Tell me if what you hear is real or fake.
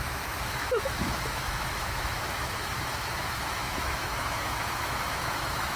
fake